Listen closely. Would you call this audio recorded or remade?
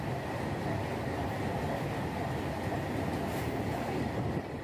recorded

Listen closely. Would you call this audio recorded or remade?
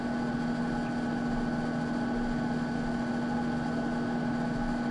recorded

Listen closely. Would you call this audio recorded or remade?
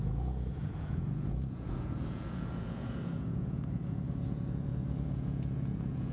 remade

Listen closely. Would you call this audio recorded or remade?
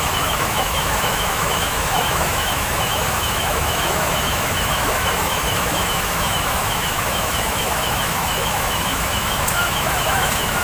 remade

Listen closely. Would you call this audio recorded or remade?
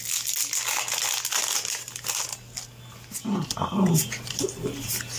recorded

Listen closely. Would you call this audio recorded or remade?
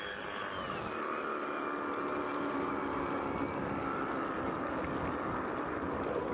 recorded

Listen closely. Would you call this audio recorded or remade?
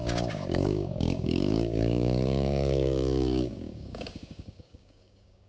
remade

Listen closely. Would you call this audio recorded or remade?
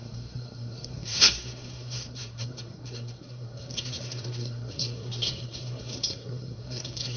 remade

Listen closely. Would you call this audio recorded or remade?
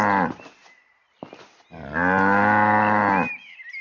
recorded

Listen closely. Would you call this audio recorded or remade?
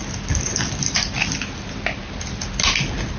recorded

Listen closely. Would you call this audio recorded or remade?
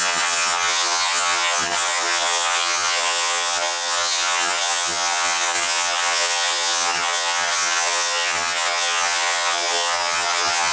remade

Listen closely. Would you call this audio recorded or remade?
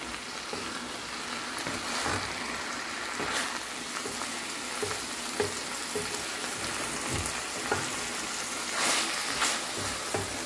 recorded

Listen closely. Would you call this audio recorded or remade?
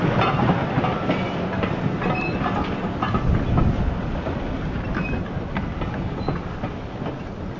recorded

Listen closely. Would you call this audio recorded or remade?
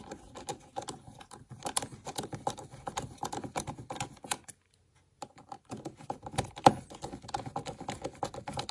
recorded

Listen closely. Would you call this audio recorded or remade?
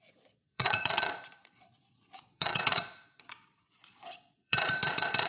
remade